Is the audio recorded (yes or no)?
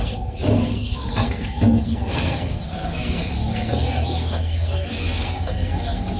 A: no